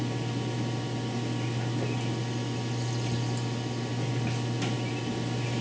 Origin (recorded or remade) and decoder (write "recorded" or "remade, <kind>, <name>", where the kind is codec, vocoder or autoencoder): recorded